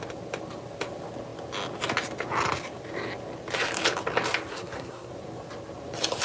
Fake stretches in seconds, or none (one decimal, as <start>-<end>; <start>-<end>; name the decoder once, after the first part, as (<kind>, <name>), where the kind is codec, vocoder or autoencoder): 4.5-5.1 (codec, SNAC)